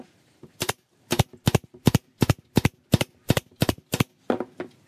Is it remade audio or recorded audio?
remade